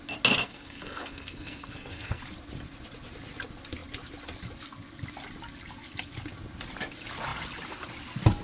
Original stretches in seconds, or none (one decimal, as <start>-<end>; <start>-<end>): 0.0-0.4; 2.2-8.4